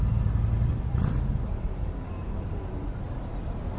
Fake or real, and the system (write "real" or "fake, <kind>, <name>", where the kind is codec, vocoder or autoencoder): real